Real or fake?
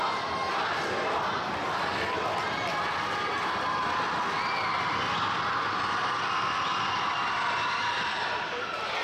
real